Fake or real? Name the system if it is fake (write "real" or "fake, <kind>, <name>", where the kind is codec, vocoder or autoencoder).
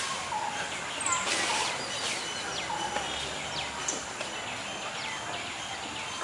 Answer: real